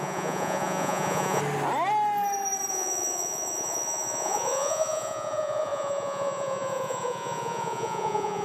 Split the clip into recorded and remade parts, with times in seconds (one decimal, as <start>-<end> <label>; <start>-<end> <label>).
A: 0.0-1.4 remade; 1.4-2.7 recorded; 2.7-8.4 remade